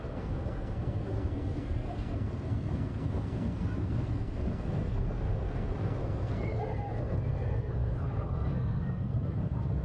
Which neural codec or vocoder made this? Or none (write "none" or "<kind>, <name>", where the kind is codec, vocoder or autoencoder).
codec, SNAC